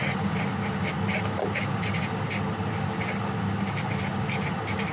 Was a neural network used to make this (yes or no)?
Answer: no